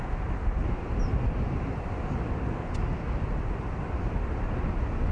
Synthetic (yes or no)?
no